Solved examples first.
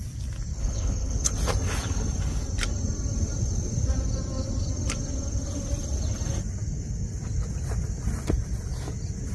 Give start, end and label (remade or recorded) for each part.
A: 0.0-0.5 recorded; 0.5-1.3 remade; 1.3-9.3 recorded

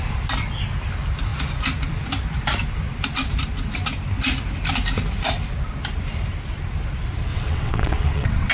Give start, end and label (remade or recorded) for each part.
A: 0.0-7.3 recorded; 7.3-8.5 remade

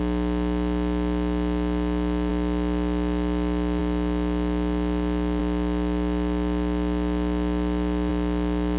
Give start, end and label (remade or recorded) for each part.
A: 0.0-8.8 recorded

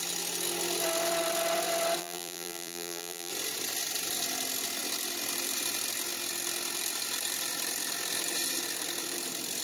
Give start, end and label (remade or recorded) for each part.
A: 0.0-2.0 recorded; 2.0-3.3 remade; 3.3-9.6 recorded

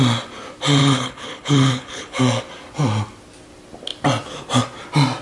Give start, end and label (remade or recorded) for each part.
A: 0.0-0.8 recorded; 0.8-2.2 remade; 2.2-5.2 recorded